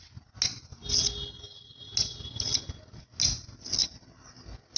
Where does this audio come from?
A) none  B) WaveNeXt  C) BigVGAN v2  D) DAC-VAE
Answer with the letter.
A